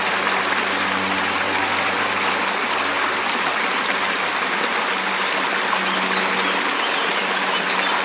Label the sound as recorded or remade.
recorded